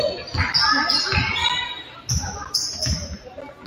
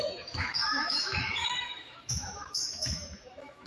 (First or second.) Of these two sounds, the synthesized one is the second